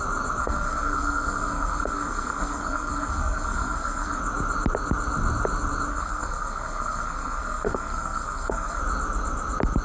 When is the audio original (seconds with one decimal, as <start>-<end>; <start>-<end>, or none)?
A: 0.0-0.4; 4.2-5.9; 8.8-9.8